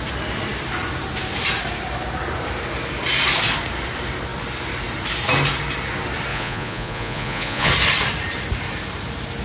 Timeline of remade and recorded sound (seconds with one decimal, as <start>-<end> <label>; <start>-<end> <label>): 0.0-6.3 recorded; 6.3-7.7 remade; 7.7-9.4 recorded